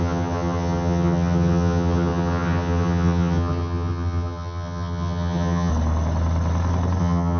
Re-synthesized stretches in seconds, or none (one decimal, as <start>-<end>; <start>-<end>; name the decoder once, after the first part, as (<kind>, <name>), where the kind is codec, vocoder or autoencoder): 0.0-5.7 (vocoder, HiFi-GAN); 7.0-7.4